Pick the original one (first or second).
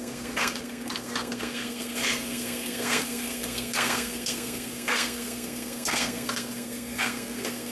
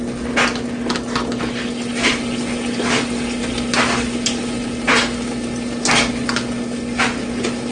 second